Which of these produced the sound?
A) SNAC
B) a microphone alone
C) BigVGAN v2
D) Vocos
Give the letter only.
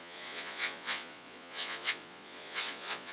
D